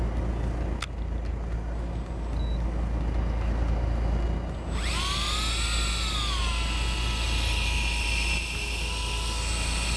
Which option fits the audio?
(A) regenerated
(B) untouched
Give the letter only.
B